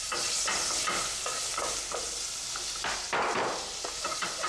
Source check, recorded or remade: recorded